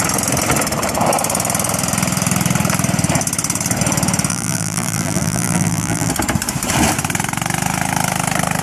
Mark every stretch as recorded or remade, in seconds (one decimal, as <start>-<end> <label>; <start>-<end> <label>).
0.0-4.3 recorded; 4.3-6.1 remade; 6.1-8.6 recorded

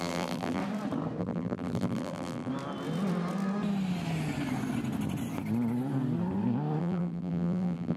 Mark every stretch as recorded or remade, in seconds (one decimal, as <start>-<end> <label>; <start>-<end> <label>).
0.0-0.6 remade; 0.6-1.2 recorded; 1.2-2.5 remade; 2.5-6.8 recorded; 6.8-8.0 remade